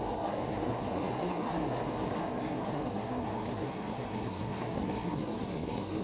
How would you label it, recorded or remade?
remade